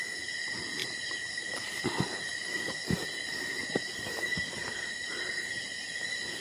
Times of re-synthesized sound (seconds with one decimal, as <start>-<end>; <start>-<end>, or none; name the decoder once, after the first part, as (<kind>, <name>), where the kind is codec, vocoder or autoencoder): 0.8-1.9 (vocoder, BigVGAN v2); 3.6-5.8